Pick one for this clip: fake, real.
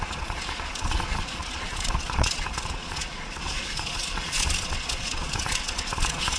fake